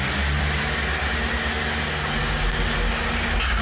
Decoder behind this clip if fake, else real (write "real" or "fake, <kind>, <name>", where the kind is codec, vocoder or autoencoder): real